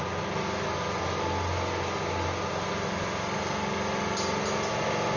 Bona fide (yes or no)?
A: yes